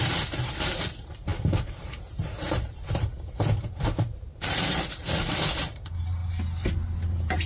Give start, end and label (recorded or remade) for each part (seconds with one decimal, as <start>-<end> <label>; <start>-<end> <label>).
0.0-6.2 remade; 6.2-7.1 recorded; 7.1-7.5 remade